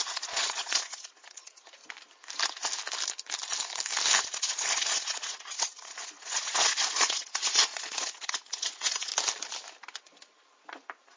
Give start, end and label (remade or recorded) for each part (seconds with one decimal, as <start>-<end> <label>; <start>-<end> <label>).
0.0-1.8 remade; 1.8-4.2 recorded; 4.2-9.1 remade; 9.1-10.0 recorded; 10.0-11.2 remade